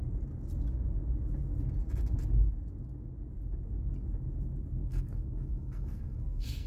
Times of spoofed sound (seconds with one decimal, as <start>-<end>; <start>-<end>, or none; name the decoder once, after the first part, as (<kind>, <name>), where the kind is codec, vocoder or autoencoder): 4.8-6.7 (codec, SNAC)